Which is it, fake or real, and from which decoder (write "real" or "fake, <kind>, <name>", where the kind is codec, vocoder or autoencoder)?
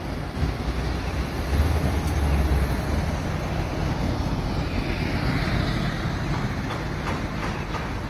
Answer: real